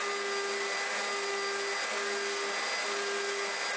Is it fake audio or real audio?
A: real